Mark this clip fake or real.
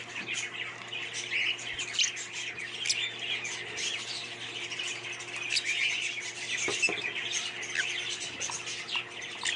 real